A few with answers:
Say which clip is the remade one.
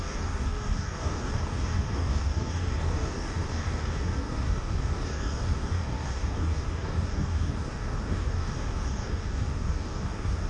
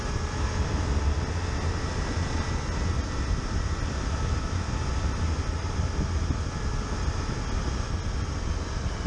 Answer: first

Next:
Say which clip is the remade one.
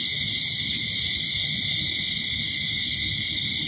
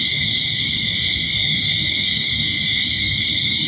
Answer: second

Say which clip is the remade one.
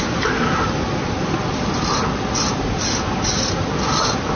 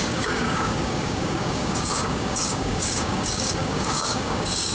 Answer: second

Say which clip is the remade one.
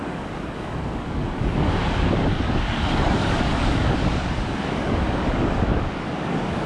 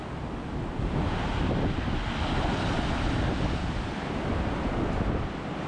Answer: first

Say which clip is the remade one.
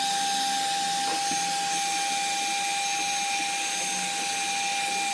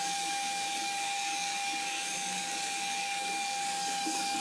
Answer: second